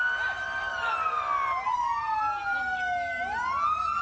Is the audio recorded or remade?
recorded